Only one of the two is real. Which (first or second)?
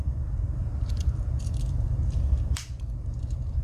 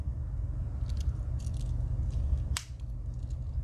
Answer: second